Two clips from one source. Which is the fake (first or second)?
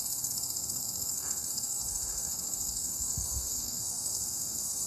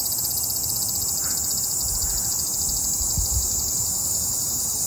first